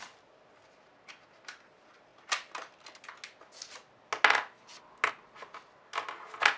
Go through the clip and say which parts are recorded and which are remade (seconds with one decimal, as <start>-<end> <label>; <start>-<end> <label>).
0.0-6.6 recorded

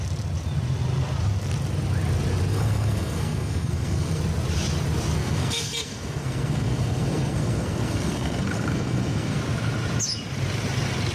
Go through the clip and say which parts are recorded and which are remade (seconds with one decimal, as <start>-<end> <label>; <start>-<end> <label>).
0.0-2.5 recorded; 2.5-4.2 remade; 4.2-5.2 recorded; 5.2-9.4 remade; 9.4-11.1 recorded

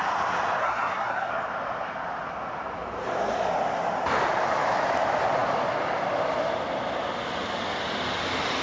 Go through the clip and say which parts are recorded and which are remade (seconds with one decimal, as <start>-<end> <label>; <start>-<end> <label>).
0.0-0.6 recorded; 0.6-1.3 remade; 1.3-8.6 recorded

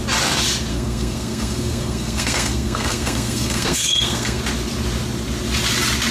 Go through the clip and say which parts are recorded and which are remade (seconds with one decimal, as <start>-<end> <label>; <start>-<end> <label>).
0.0-0.7 recorded; 0.7-4.4 remade; 4.4-6.1 recorded

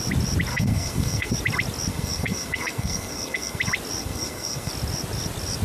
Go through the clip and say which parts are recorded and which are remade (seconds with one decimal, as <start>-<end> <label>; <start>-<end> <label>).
0.0-0.5 recorded; 0.5-1.3 remade; 1.3-1.9 recorded; 1.9-3.6 remade; 3.6-4.0 recorded; 4.0-4.7 remade; 4.7-5.6 recorded

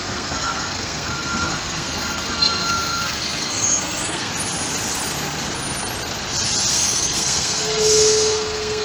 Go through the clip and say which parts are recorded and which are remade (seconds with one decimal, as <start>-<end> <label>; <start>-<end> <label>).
0.0-4.3 remade; 4.3-6.7 recorded; 6.7-8.8 remade